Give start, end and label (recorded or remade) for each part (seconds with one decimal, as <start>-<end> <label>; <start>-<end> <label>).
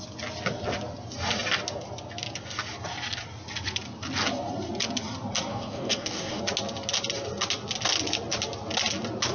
0.0-5.5 recorded; 5.5-6.4 remade; 6.4-9.3 recorded